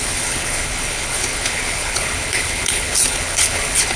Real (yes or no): no